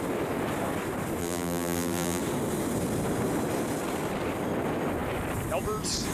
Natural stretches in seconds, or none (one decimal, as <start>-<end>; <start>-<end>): 0.0-1.2; 2.2-6.1